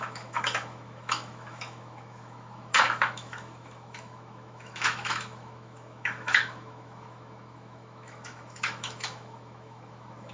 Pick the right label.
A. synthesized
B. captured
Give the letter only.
A